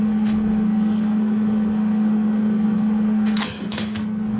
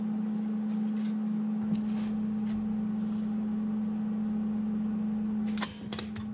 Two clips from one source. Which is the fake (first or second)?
first